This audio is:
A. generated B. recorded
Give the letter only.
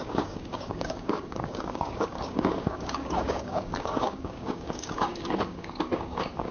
A